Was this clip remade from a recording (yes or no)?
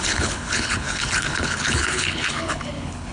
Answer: yes